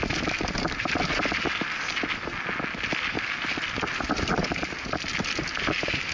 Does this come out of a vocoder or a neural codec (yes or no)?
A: no